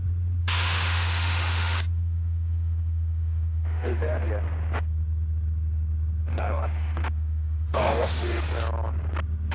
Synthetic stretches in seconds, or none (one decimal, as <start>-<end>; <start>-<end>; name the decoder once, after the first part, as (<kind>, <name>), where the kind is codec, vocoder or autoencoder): 0.4-4.3 (autoencoder, DAC-VAE); 6.3-8.4